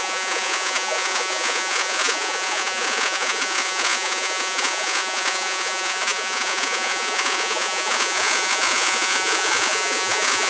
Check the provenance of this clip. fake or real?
fake